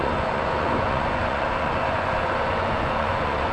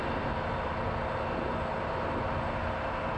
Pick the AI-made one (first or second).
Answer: first